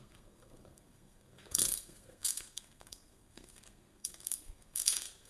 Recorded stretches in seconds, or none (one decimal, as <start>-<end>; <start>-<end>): none

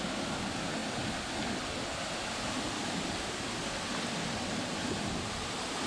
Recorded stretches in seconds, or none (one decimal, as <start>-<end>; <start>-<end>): 0.0-5.9

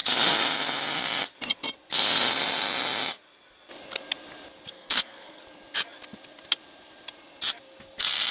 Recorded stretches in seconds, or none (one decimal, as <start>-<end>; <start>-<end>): 0.0-4.7; 5.4-8.3

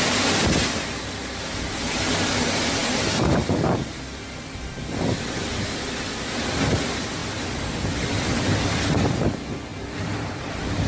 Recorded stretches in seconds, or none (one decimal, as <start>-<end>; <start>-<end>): 0.0-10.9

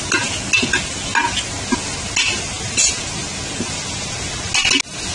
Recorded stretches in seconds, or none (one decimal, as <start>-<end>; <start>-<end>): 0.0-5.1

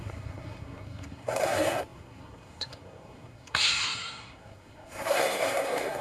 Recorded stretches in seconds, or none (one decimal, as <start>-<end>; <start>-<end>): none

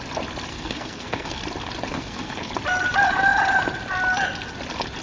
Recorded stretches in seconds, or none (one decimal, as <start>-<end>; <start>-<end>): 0.0-0.5; 1.4-1.9; 2.5-5.0

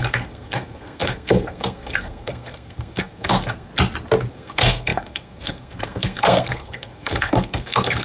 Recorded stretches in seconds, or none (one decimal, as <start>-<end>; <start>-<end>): 3.7-4.3